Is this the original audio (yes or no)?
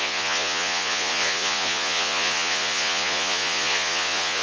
no